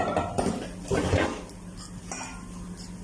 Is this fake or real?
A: real